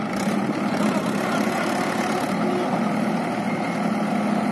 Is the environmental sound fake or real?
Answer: real